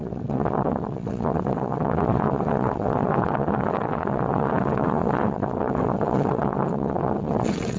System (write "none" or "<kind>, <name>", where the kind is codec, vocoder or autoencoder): vocoder, WaveNeXt